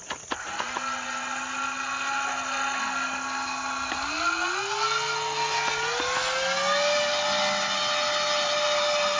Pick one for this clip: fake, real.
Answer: real